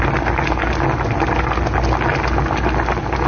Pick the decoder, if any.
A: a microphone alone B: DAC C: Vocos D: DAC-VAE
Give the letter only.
A